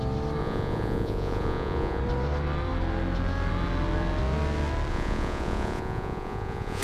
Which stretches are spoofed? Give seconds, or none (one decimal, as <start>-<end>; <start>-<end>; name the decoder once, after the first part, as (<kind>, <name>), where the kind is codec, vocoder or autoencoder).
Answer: 0.4-2.0 (vocoder, Vocos); 4.9-6.8

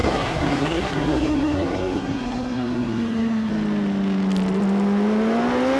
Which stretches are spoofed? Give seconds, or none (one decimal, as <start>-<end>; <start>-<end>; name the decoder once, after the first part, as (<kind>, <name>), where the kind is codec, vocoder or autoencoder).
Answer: 0.0-3.5 (codec, SNAC)

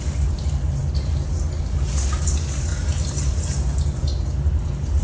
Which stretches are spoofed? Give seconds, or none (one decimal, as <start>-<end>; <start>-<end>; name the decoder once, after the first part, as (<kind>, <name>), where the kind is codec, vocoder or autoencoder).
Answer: none

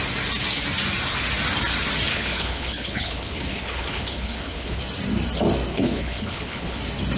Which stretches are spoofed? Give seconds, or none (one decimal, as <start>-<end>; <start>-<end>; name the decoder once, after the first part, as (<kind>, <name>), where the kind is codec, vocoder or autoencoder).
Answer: 2.1-4.8 (codec, HILCodec); 5.7-6.8

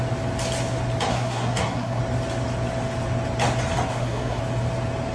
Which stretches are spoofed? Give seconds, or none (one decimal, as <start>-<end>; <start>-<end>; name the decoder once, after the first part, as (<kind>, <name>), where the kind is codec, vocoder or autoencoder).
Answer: 1.1-2.0 (codec, SNAC); 3.9-4.4

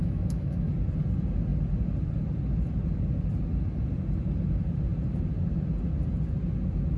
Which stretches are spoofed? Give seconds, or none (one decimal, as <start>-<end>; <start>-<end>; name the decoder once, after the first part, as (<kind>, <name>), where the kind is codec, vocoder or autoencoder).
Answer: 0.0-0.7 (autoencoder, DAC-VAE)

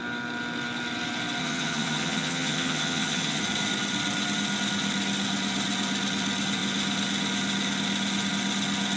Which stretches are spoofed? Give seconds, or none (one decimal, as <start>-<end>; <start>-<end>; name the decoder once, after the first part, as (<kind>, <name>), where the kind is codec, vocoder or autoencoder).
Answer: 1.4-3.4 (vocoder, HiFi-GAN)